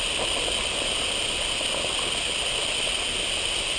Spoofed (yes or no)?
no